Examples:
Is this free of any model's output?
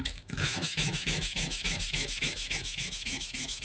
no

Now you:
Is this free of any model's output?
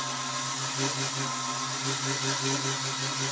yes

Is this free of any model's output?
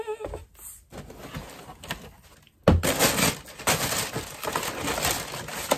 yes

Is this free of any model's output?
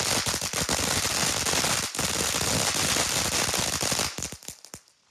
yes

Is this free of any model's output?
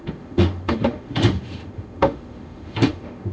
no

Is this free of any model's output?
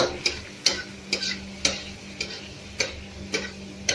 yes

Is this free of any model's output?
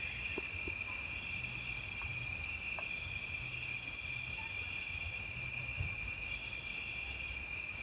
yes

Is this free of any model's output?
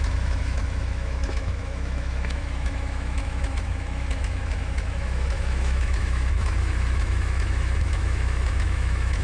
no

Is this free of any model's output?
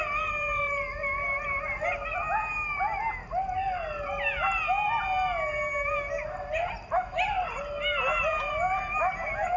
yes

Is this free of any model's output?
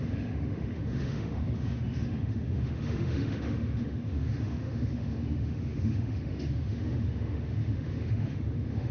no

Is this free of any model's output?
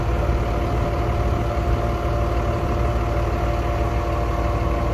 yes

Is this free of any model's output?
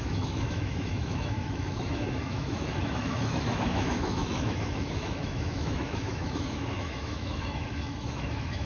no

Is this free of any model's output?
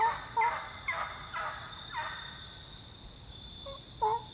yes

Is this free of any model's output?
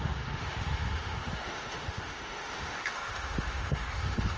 no